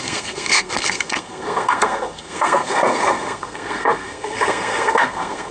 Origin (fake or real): fake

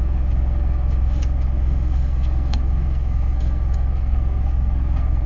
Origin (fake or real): fake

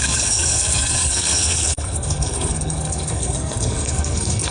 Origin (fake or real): fake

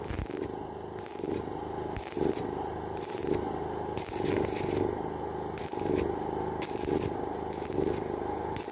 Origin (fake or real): real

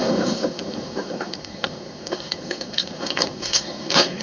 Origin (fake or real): fake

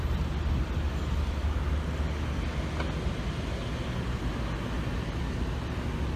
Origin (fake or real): real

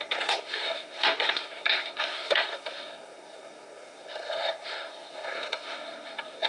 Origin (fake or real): fake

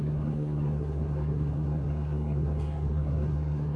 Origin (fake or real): fake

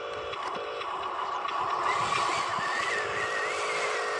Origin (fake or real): real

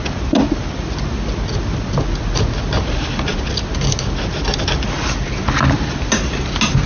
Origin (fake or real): real